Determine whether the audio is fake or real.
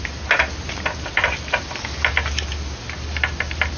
real